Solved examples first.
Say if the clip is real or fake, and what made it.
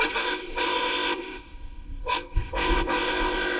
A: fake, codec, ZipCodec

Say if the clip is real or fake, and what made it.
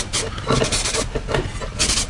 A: real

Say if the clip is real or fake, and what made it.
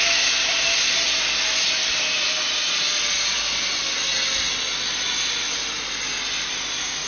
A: real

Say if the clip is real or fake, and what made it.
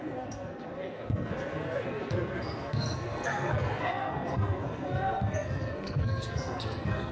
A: fake, codec, SNAC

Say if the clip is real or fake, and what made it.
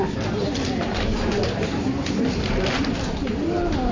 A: fake, vocoder, BigVGAN v2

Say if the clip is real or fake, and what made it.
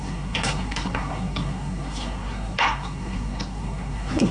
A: fake, codec, SNAC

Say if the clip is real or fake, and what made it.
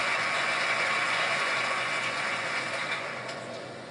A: fake, vocoder, Vocos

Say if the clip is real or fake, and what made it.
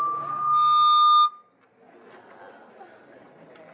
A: real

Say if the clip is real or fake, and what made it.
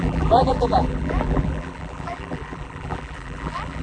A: fake, vocoder, BigVGAN v2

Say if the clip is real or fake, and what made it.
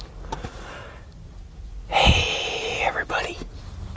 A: real